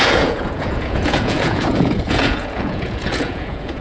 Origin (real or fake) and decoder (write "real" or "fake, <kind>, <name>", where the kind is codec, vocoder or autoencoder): fake, vocoder, Vocos